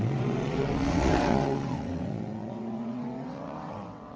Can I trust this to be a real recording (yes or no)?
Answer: no